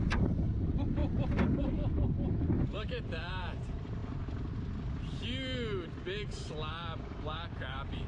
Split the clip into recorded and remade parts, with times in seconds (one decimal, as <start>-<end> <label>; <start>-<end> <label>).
0.0-1.0 remade; 1.0-2.6 recorded; 2.6-4.0 remade; 4.0-6.7 recorded; 6.7-8.1 remade